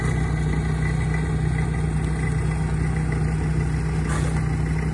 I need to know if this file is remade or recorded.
recorded